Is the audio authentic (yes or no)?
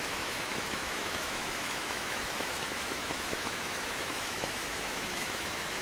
no